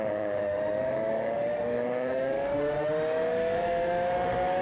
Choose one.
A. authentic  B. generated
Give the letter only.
B